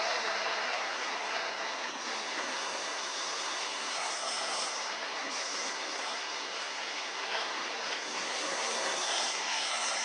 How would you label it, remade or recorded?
remade